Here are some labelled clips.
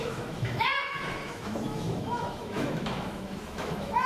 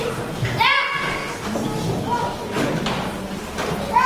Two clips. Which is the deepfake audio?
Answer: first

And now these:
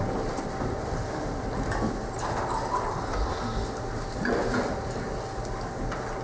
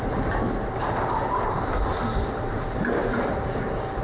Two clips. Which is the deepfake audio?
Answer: second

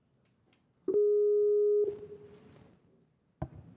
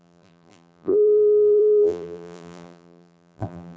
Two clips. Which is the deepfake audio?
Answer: second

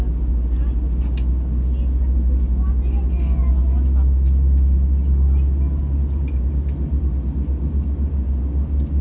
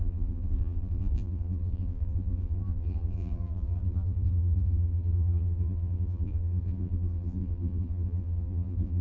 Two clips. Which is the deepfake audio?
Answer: second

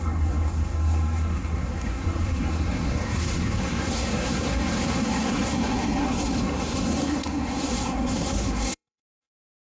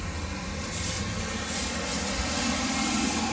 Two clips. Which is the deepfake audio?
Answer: first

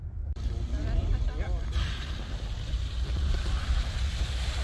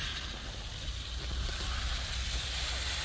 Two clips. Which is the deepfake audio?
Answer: first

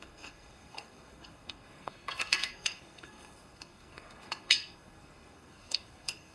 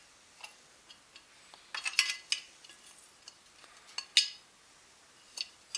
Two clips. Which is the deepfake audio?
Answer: first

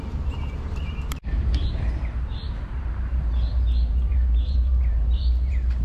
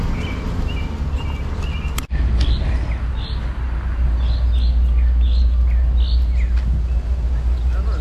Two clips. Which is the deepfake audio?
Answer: first